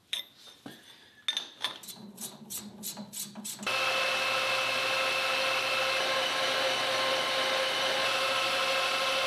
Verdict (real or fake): real